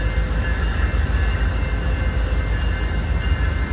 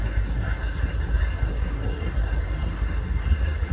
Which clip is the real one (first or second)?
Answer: first